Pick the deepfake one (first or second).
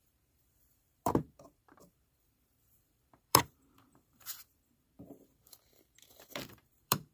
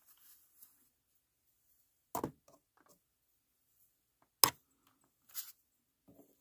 first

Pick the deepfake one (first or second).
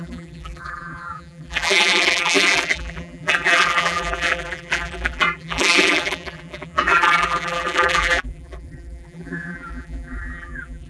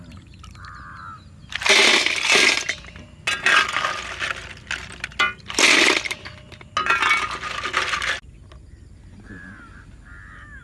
first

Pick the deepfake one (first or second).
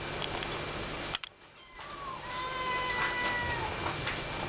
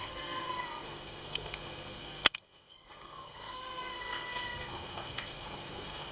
second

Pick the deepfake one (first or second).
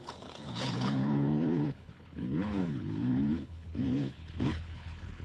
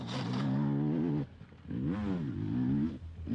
first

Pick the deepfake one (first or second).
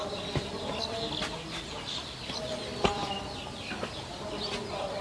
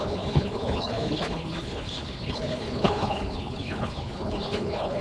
second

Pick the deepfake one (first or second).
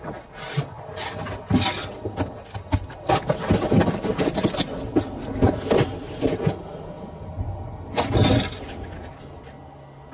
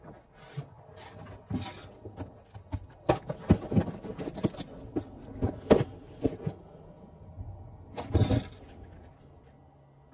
first